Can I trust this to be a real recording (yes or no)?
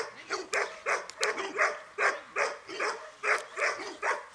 yes